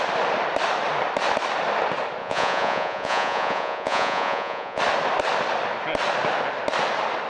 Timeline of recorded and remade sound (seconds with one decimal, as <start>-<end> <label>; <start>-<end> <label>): 0.0-2.2 recorded; 2.2-4.8 remade; 4.8-7.3 recorded